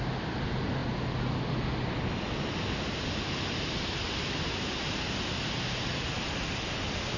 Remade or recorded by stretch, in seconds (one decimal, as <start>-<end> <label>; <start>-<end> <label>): 0.0-7.2 recorded